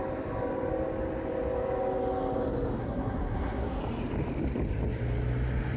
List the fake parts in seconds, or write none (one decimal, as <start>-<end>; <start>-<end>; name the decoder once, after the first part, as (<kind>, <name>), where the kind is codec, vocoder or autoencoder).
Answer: 2.8-3.8 (codec, SNAC)

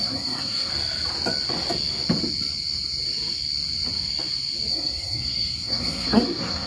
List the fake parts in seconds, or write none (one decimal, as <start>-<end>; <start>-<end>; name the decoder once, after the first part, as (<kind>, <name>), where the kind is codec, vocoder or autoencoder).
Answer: 0.0-0.7 (codec, SNAC); 4.7-6.7

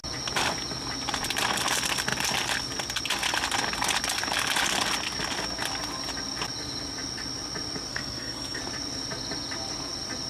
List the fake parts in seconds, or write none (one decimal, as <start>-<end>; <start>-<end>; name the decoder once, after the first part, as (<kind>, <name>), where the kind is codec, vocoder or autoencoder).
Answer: 7.9-8.6 (codec, SNAC)

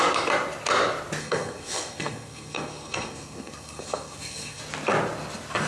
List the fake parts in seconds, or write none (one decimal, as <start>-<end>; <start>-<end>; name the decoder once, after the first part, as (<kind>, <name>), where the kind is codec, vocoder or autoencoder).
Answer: 1.2-4.6 (codec, SNAC)